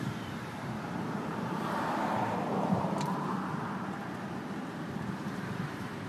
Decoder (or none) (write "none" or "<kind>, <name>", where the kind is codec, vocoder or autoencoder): vocoder, BigVGAN v2